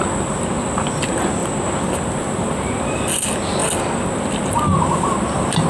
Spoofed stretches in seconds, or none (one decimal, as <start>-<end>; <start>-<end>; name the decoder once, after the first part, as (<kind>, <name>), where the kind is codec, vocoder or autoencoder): none